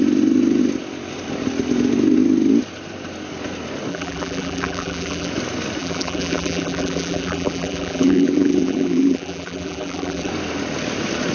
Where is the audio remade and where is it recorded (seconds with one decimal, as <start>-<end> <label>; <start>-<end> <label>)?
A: 0.0-3.9 recorded; 3.9-5.3 remade; 5.3-5.8 recorded; 5.8-10.3 remade; 10.3-11.3 recorded

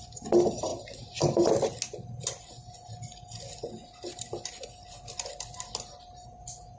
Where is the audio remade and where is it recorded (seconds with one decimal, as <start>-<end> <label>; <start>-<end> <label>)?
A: 0.0-0.7 recorded; 0.7-1.6 remade; 1.6-6.8 recorded

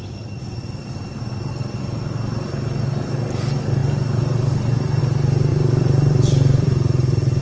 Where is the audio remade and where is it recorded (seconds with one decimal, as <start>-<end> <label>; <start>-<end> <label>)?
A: 0.0-5.5 recorded; 5.5-7.4 remade

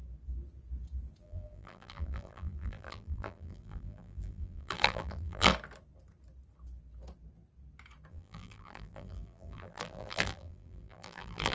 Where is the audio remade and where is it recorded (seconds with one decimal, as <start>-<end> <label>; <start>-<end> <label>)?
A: 0.0-1.2 recorded; 1.2-5.5 remade; 5.5-8.1 recorded; 8.1-11.5 remade

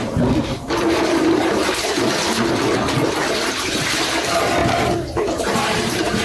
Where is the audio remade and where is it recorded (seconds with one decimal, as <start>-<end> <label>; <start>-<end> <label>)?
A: 0.0-2.0 remade; 2.0-4.6 recorded; 4.6-6.2 remade